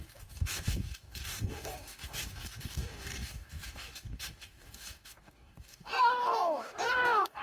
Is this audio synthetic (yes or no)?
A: yes